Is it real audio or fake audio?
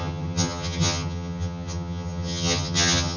fake